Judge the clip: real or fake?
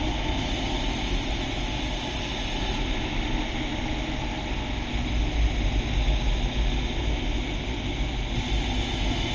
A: real